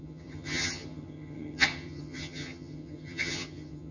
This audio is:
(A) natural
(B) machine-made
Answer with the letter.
B